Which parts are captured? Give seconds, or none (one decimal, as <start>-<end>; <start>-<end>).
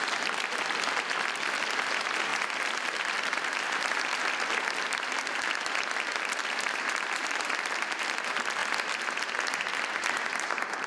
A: 8.6-9.4